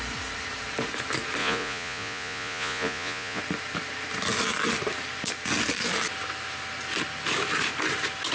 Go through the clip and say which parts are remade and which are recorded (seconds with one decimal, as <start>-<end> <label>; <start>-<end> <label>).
0.0-1.4 recorded; 1.4-3.4 remade; 3.4-8.3 recorded